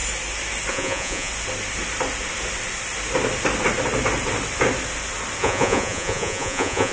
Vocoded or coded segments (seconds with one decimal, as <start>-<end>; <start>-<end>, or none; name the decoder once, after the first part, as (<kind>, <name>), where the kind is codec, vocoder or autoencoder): 0.7-1.3 (vocoder, Vocos); 5.4-6.9